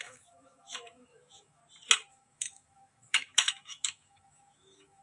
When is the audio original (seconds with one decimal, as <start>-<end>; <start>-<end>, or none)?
1.6-2.1